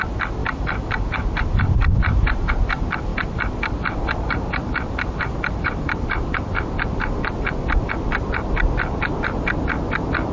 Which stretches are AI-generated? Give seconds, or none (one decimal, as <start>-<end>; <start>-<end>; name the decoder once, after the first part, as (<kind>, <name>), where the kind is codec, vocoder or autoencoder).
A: 0.4-2.5 (vocoder, BigVGAN v2); 3.1-7.9